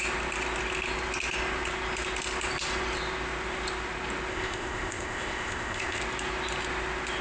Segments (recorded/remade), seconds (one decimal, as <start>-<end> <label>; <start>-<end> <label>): 0.0-4.3 recorded; 4.3-6.0 remade; 6.0-7.2 recorded